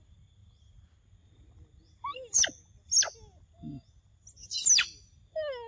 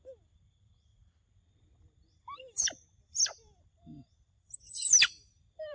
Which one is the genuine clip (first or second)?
first